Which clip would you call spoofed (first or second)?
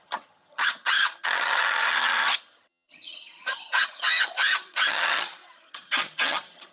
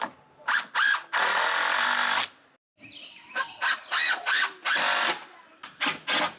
first